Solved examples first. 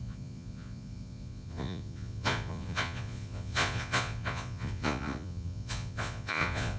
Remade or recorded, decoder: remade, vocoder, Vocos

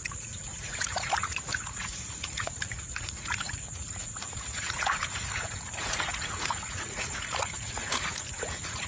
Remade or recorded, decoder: remade, vocoder, Vocos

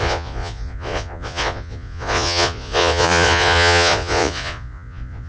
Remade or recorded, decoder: remade, vocoder, Vocos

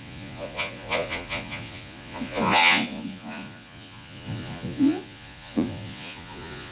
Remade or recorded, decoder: remade, vocoder, Vocos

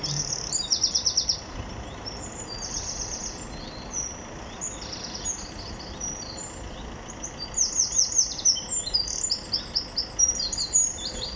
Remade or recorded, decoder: recorded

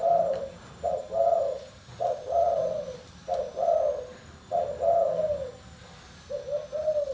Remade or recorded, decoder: recorded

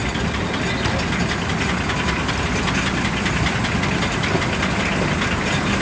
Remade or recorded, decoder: recorded